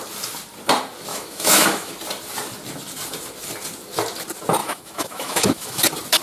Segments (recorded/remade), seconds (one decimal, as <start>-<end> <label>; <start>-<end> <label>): 0.0-1.1 recorded; 1.1-1.9 remade; 1.9-4.6 recorded; 4.6-5.8 remade; 5.8-6.2 recorded